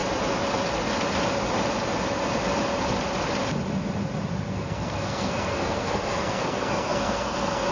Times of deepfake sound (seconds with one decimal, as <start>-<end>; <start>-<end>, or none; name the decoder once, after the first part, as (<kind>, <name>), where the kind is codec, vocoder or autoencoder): 4.4-7.7 (codec, SNAC)